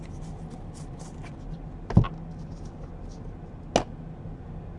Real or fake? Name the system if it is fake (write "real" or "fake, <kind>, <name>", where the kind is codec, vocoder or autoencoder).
real